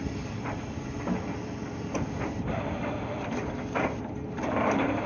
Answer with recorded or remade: remade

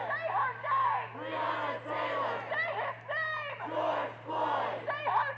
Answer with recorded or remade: recorded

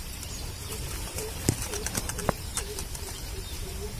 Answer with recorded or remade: remade